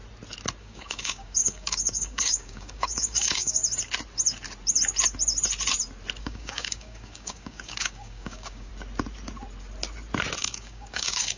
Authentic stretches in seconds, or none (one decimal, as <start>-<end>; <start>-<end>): 0.0-0.6; 3.6-6.2; 8.7-10.4